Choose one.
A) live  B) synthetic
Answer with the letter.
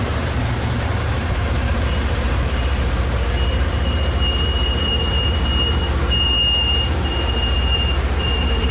B